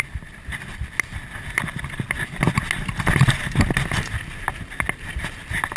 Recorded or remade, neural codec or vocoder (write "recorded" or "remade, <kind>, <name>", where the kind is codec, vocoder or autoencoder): recorded